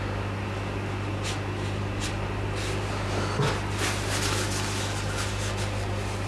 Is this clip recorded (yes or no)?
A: yes